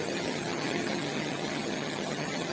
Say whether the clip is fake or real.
fake